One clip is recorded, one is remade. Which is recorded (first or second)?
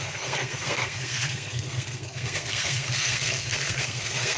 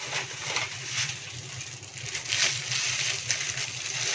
second